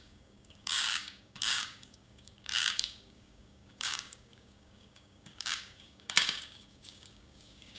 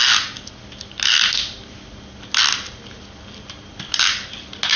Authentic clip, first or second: second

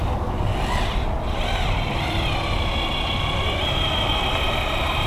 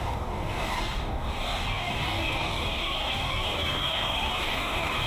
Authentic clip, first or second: first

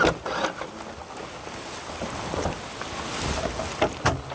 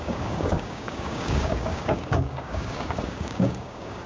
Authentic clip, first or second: first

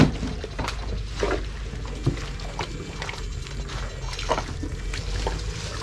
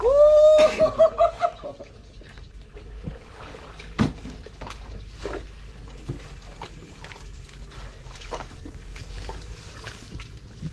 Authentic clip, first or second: first